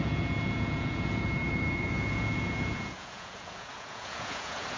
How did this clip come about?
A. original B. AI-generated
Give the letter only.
B